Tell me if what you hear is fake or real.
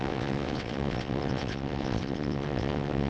fake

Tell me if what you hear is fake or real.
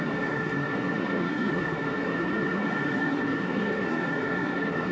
fake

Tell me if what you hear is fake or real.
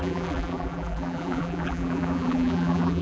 fake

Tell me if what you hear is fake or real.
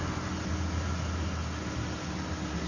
real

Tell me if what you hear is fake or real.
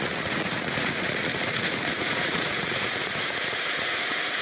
fake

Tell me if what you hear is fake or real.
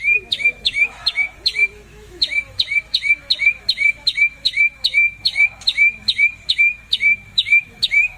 fake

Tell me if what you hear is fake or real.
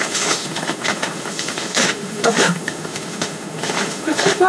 fake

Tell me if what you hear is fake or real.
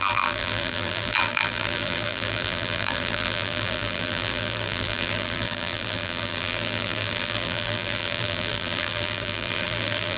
fake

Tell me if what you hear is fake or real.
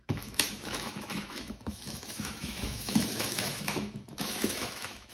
fake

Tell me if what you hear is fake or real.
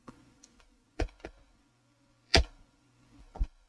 fake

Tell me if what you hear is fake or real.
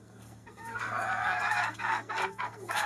fake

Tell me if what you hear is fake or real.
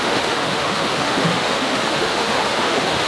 fake